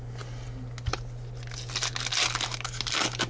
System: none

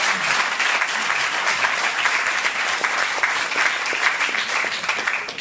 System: none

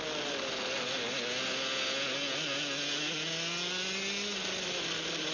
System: none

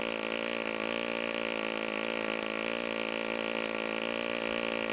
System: none